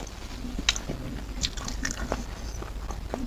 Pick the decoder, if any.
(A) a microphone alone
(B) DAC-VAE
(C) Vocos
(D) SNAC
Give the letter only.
A